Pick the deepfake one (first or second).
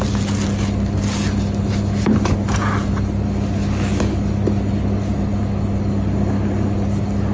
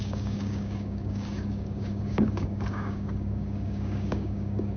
second